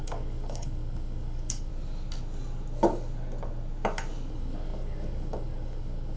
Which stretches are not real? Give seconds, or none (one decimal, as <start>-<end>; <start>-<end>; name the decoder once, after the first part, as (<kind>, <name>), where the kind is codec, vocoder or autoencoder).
0.0-1.7 (codec, DAC); 4.3-6.2